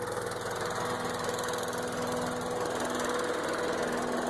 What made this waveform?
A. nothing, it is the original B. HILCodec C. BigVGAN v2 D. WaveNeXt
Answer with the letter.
A